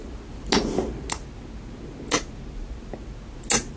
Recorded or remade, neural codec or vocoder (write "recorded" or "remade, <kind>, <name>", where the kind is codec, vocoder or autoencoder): recorded